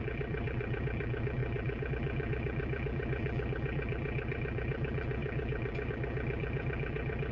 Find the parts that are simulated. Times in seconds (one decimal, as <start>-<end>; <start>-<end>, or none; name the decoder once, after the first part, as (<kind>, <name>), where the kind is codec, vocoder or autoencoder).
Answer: 0.0-7.3 (vocoder, BigVGAN v2)